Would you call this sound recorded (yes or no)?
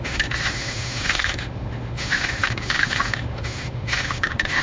no